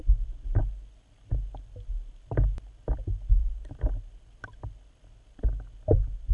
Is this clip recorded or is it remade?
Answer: recorded